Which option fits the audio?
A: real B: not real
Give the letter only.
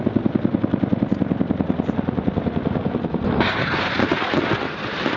A